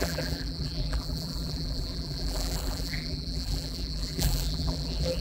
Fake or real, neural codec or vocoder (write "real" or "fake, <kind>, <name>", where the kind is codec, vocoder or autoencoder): fake, vocoder, BigVGAN v2